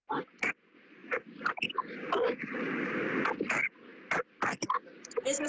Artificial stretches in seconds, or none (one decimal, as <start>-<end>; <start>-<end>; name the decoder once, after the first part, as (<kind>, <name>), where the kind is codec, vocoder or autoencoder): none